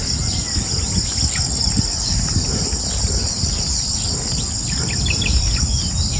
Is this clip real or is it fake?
real